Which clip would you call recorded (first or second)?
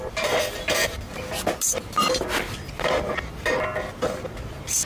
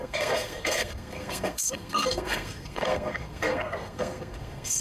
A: first